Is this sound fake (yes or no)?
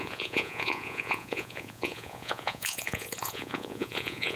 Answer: yes